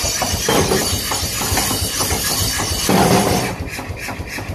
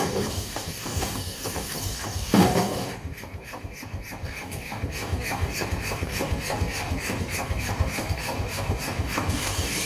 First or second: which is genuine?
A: first